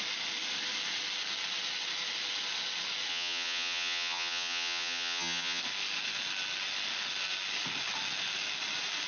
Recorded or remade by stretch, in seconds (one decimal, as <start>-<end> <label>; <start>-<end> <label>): 0.0-3.1 recorded; 3.1-5.6 remade; 5.6-9.1 recorded